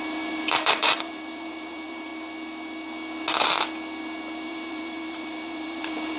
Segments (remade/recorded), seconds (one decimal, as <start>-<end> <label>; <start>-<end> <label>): 0.0-2.1 remade; 2.1-4.5 recorded; 4.5-6.2 remade